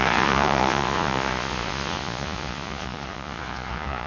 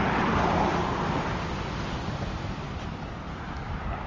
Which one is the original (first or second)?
second